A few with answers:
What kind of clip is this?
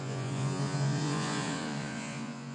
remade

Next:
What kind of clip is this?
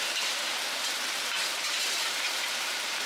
remade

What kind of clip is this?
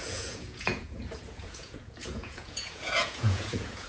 remade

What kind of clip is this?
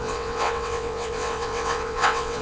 remade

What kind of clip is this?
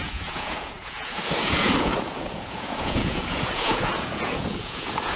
remade